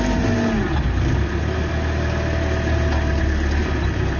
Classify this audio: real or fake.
real